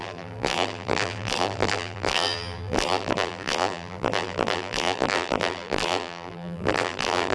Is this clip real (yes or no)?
no